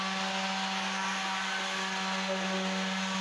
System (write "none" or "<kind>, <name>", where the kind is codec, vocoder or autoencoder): none